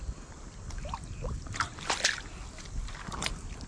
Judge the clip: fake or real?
real